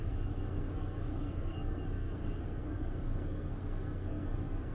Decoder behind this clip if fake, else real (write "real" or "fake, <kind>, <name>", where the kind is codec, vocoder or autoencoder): fake, codec, SNAC